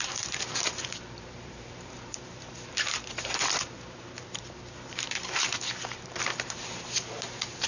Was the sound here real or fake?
fake